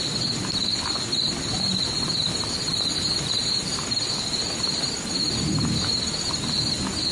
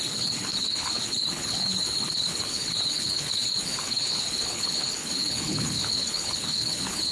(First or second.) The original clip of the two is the first